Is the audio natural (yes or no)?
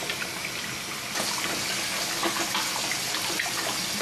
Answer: yes